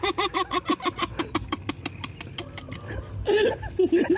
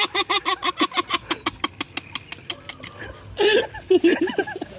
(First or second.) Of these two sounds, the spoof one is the first